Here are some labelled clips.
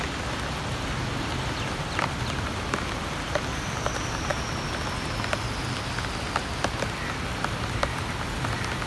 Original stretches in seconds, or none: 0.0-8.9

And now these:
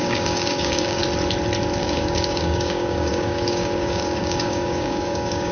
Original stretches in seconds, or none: 1.0-1.8

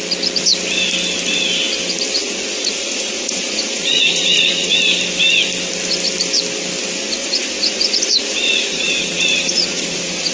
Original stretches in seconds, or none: 0.0-2.2; 4.8-7.2

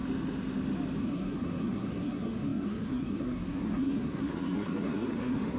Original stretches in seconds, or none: 0.0-1.0

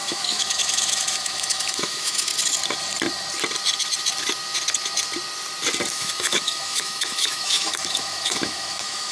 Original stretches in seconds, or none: 2.3-5.9

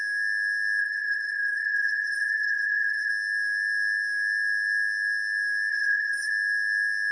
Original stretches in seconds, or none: 0.0-0.8; 3.1-5.7; 6.3-7.1

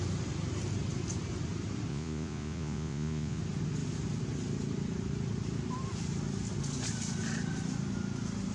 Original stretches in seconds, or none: 0.0-1.9; 3.4-8.5

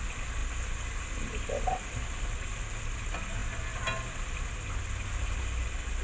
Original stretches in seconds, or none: 0.0-6.0